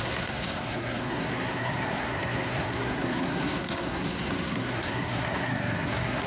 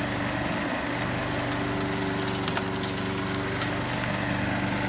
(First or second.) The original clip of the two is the second